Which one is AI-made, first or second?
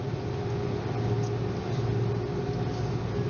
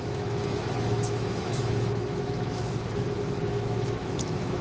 second